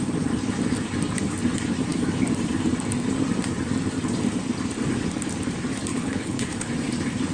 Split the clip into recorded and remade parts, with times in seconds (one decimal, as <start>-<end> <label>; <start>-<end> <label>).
0.0-5.9 recorded; 5.9-6.7 remade; 6.7-7.3 recorded